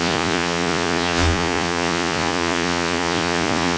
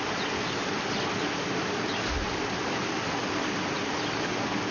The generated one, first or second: first